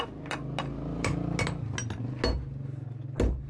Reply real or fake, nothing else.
real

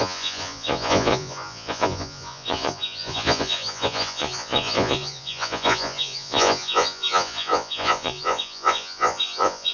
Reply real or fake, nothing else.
fake